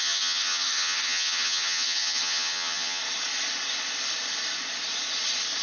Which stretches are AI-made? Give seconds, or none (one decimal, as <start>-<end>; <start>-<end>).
0.0-3.0